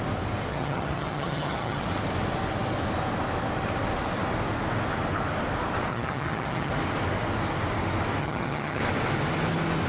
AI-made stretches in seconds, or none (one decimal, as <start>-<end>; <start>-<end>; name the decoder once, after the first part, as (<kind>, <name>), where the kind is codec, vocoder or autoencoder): 0.5-1.9 (vocoder, HiFi-GAN); 5.9-6.7; 8.2-8.8